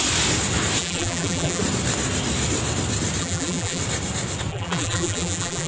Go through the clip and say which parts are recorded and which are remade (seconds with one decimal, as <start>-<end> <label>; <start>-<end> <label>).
0.0-0.8 recorded; 0.8-1.6 remade; 1.6-3.2 recorded; 3.2-3.8 remade; 3.8-4.5 recorded; 4.5-5.7 remade